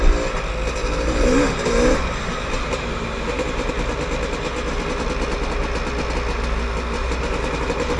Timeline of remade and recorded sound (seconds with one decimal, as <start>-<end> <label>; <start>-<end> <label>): 0.0-0.8 recorded; 0.8-3.7 remade; 3.7-7.0 recorded; 7.0-8.0 remade